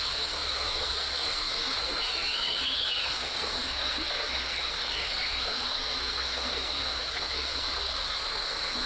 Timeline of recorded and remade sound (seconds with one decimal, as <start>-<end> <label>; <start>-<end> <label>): 0.0-8.9 remade